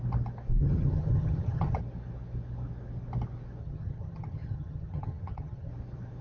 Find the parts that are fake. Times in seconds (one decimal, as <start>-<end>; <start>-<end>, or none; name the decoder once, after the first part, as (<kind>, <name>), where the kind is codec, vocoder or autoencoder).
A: 0.6-1.8 (vocoder, HiFi-GAN); 3.6-5.7